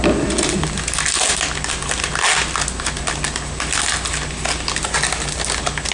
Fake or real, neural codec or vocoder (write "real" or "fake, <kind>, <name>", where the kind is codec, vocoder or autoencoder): real